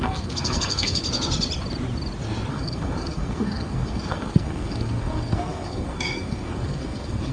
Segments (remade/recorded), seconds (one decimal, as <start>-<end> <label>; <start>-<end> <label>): 0.0-1.0 remade; 1.0-2.5 recorded; 2.5-7.3 remade

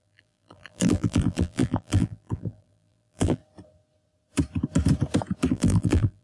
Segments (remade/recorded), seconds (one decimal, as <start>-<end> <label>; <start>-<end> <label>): 0.0-3.4 remade; 3.4-5.5 recorded; 5.5-6.2 remade

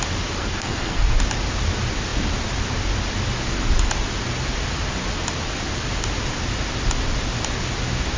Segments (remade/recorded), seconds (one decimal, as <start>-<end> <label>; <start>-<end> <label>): 0.0-0.4 recorded; 0.4-1.2 remade; 1.2-8.2 recorded

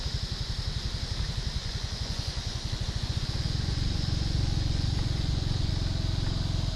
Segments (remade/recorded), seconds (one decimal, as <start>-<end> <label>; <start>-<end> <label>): 0.0-1.6 recorded; 1.6-5.7 remade; 5.7-6.8 recorded

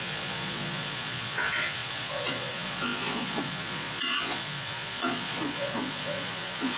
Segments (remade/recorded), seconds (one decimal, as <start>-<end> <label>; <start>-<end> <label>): 0.0-6.8 remade

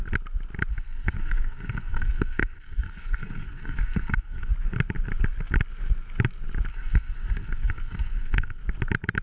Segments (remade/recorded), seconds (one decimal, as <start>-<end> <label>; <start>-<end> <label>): 0.0-0.7 recorded; 0.7-4.5 remade; 4.5-6.7 recorded; 6.7-8.6 remade; 8.6-9.2 recorded